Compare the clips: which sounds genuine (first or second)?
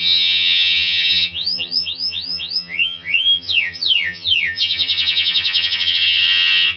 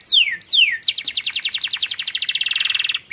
second